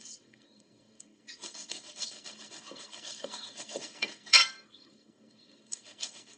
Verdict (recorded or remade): remade